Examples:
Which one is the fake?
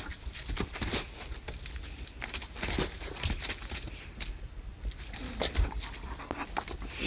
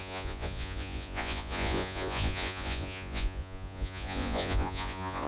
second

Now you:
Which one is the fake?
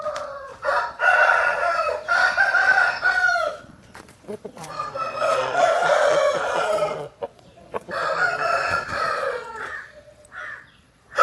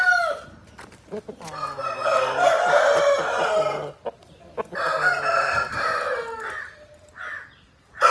first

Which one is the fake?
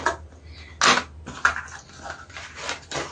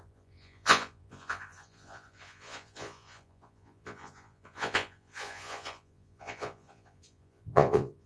second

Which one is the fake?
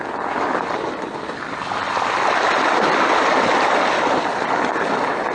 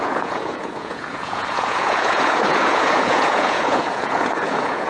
second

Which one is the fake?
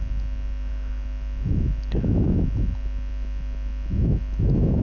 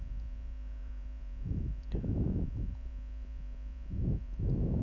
second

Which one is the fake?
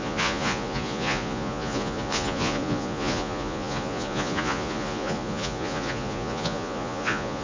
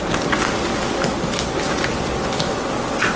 first